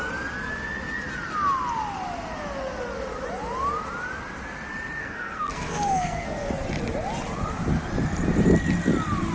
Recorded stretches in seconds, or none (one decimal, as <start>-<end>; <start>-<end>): 0.0-5.0; 6.5-9.3

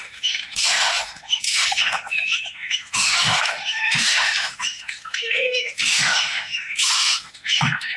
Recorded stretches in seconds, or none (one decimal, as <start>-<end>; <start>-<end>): none